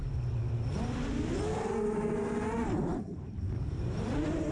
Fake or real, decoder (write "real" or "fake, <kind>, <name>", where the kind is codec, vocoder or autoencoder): fake, vocoder, BigVGAN v2